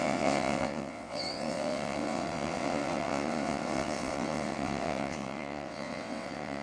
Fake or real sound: fake